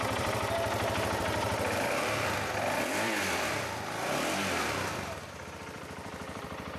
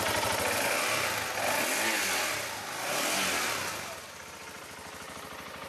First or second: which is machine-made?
first